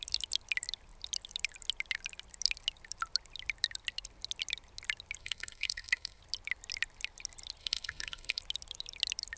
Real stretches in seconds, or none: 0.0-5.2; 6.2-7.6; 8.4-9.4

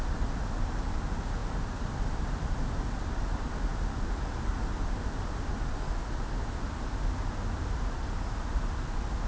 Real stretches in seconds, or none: 0.0-9.3

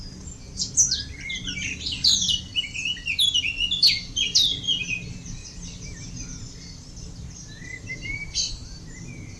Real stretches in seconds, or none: 0.0-9.4

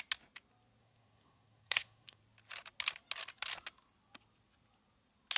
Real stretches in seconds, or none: 0.0-0.8; 2.2-5.4

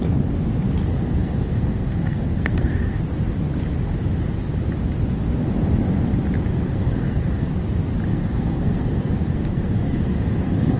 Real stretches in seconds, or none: 0.0-0.8; 3.0-6.5; 7.5-8.1

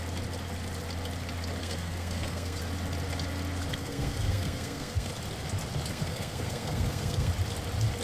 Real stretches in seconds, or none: 0.0-1.6; 2.6-3.7; 5.1-5.9; 7.3-8.0